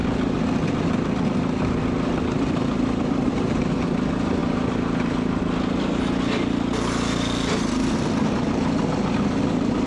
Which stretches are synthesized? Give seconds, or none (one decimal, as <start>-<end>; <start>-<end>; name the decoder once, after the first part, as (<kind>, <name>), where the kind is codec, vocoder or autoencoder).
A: none